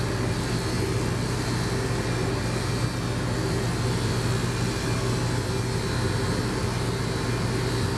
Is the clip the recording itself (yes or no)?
yes